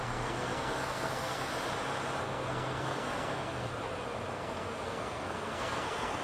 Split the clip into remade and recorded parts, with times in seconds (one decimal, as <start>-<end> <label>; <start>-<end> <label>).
0.0-1.5 remade; 1.5-2.2 recorded; 2.2-3.7 remade; 3.7-4.3 recorded; 4.3-6.2 remade